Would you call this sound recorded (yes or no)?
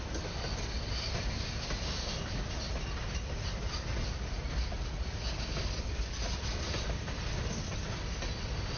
yes